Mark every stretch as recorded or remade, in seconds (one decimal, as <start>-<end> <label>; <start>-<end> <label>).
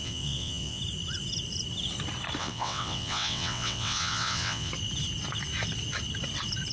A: 0.0-0.8 remade; 0.8-2.4 recorded; 2.4-4.7 remade; 4.7-6.7 recorded